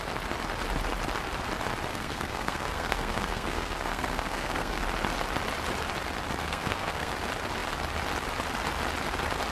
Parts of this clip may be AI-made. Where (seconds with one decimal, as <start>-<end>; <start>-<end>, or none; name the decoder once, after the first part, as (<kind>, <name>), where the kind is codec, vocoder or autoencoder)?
1.9-4.8 (codec, SNAC); 6.4-7.1